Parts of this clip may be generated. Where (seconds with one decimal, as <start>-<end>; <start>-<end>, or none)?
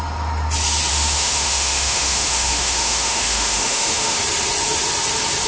0.9-4.2